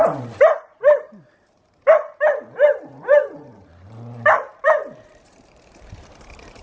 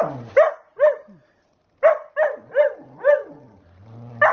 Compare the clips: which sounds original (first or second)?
second